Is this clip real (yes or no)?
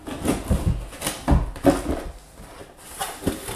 yes